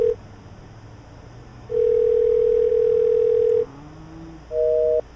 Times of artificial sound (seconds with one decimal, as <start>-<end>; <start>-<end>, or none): 1.5-2.7